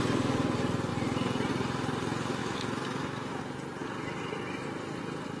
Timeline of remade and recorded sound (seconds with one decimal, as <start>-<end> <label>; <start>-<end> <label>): 0.0-2.4 recorded; 2.4-3.4 remade; 3.4-5.4 recorded

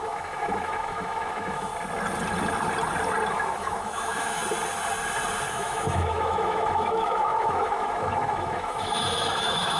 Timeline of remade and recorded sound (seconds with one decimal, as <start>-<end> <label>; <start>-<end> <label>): 0.0-1.7 remade; 1.7-3.3 recorded; 3.3-4.4 remade; 4.4-5.5 recorded; 5.5-9.8 remade

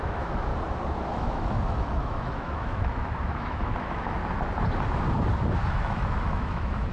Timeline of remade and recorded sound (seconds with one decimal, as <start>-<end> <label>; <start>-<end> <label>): 0.0-0.5 remade; 0.5-1.1 recorded; 1.1-4.2 remade; 4.2-5.7 recorded; 5.7-6.9 remade

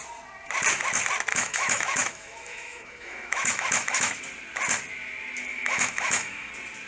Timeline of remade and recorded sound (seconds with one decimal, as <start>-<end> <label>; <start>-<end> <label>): 0.0-1.3 recorded; 1.3-4.2 remade; 4.2-5.5 recorded; 5.5-6.5 remade; 6.5-6.9 recorded

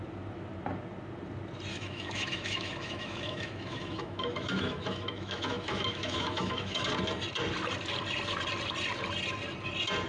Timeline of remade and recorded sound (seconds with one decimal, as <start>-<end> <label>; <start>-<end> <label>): 0.0-1.7 recorded; 1.7-6.9 remade; 6.9-10.1 recorded

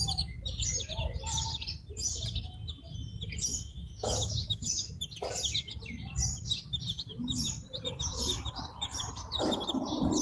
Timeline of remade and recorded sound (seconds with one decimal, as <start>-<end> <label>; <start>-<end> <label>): 0.0-3.5 recorded; 3.5-4.9 remade; 4.9-10.2 recorded